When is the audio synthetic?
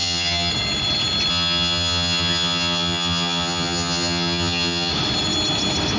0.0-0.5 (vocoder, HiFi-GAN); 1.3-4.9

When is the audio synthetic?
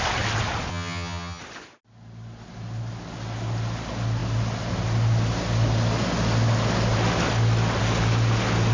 0.7-1.4 (vocoder, HiFi-GAN)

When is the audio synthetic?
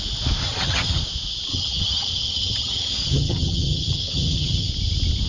0.4-1.0 (vocoder, HiFi-GAN); 1.5-4.7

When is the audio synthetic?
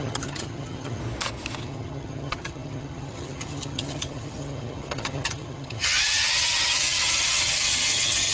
0.0-1.0 (vocoder, HiFi-GAN); 1.6-8.3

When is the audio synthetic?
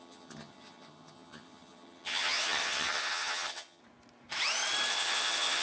0.0-3.8 (vocoder, HiFi-GAN); 4.9-5.6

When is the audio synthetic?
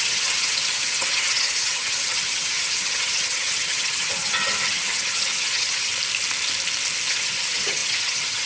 0.0-5.9 (vocoder, HiFi-GAN); 7.1-8.5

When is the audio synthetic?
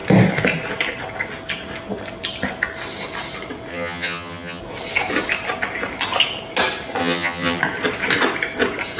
3.7-4.6 (vocoder, HiFi-GAN); 7.0-7.6